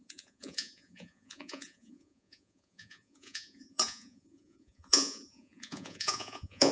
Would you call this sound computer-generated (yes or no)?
yes